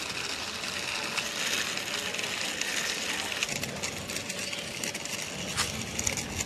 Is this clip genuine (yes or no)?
yes